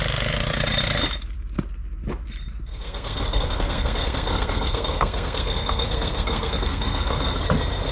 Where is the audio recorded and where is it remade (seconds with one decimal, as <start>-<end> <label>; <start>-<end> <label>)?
0.0-2.7 recorded; 2.7-7.4 remade; 7.4-7.9 recorded